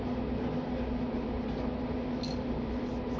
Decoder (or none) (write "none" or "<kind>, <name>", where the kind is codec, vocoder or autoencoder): none